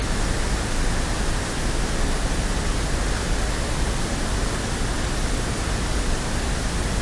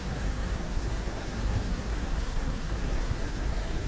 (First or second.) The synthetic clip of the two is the second